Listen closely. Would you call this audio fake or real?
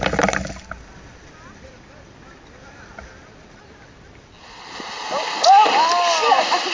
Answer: real